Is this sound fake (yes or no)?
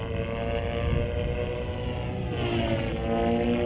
no